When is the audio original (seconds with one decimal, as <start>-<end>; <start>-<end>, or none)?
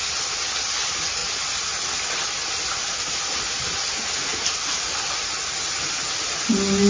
0.0-6.9